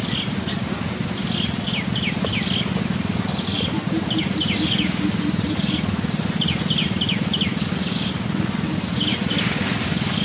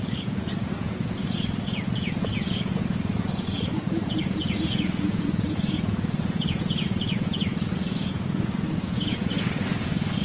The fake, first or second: second